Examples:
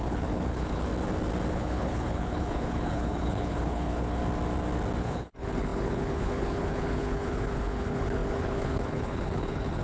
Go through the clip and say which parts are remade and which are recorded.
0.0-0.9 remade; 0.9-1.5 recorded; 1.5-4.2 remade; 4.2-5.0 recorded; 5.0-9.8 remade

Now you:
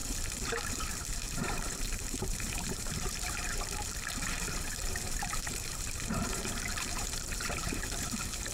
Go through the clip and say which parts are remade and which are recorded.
0.0-8.5 remade

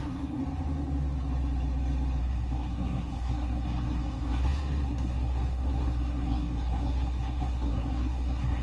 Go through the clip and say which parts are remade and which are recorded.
0.0-0.4 remade; 0.4-2.2 recorded; 2.2-8.6 remade

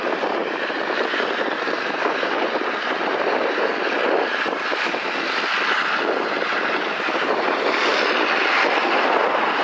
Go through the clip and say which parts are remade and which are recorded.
0.0-3.7 remade; 3.7-6.2 recorded; 6.2-7.9 remade; 7.9-9.0 recorded; 9.0-9.6 remade

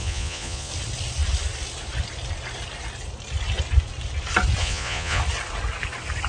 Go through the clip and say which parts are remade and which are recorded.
0.0-0.7 remade; 0.7-4.6 recorded; 4.6-5.2 remade; 5.2-6.3 recorded